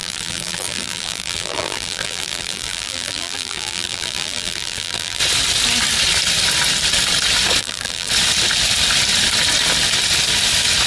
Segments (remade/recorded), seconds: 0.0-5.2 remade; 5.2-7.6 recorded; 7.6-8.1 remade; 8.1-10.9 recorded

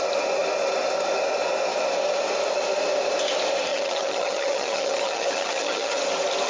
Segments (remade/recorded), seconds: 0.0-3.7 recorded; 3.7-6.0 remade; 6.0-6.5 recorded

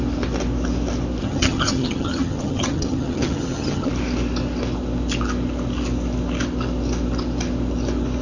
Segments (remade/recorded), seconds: 0.0-1.2 recorded; 1.2-3.9 remade; 3.9-8.2 recorded

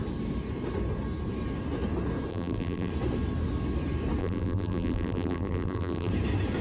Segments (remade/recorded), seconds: 0.0-2.3 recorded; 2.3-2.9 remade; 2.9-4.2 recorded; 4.2-6.1 remade; 6.1-6.6 recorded